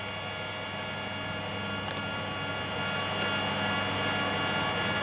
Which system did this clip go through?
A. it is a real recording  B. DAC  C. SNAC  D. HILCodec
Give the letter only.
A